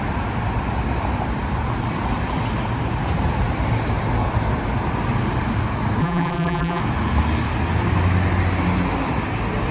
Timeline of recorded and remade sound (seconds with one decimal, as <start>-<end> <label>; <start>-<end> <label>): 0.0-6.0 recorded; 6.0-6.8 remade; 6.8-9.7 recorded